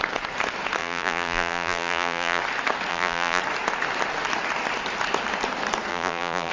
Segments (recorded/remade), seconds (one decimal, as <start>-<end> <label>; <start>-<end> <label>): 0.0-0.8 recorded; 0.8-2.4 remade; 2.4-2.9 recorded; 2.9-3.4 remade; 3.4-5.9 recorded; 5.9-6.5 remade